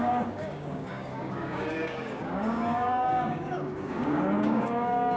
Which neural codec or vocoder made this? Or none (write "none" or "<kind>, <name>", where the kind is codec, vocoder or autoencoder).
codec, DAC